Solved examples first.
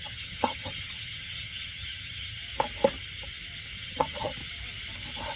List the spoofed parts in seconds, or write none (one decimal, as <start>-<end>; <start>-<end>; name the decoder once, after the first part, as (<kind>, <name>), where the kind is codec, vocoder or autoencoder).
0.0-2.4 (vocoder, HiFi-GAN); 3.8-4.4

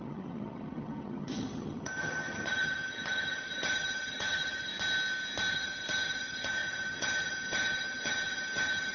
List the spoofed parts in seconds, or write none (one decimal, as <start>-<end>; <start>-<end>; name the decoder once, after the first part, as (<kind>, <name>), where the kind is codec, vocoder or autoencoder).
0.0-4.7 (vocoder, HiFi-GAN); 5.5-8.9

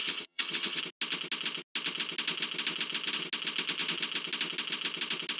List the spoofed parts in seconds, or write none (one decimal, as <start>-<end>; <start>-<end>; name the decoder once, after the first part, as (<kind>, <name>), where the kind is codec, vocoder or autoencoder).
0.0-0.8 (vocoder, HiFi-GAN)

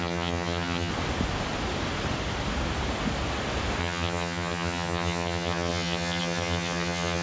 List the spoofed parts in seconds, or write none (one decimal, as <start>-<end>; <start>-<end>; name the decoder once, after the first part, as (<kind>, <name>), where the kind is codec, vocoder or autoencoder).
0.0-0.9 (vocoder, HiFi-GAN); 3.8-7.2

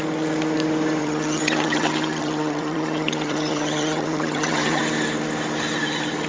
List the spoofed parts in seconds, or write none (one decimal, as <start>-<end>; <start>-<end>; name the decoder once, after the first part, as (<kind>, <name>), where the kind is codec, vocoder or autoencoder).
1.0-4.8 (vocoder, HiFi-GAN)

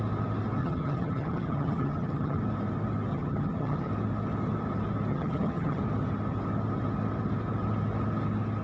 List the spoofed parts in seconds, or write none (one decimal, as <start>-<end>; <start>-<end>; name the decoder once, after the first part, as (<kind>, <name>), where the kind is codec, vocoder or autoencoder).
0.6-2.4 (vocoder, HiFi-GAN); 3.1-3.9; 5.1-5.8